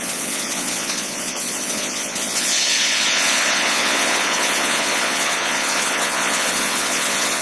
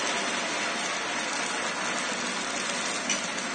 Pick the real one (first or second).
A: second